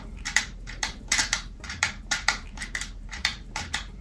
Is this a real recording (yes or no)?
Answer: no